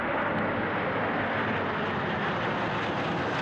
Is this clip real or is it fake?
real